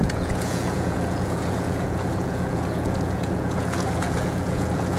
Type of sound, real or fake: fake